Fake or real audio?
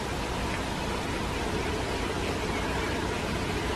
real